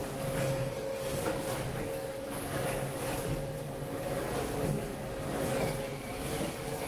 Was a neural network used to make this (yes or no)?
yes